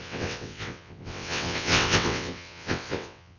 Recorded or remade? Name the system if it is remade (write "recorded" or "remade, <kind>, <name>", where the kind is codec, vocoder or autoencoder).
remade, vocoder, WaveNeXt